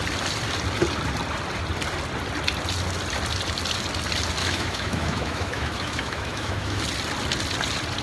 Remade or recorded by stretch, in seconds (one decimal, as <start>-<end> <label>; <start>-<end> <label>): 0.0-4.4 recorded; 4.4-6.8 remade; 6.8-8.0 recorded